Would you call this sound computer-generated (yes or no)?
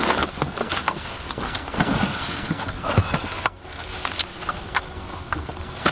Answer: yes